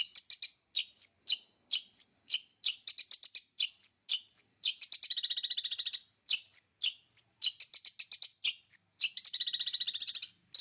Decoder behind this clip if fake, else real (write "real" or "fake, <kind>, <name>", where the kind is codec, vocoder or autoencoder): real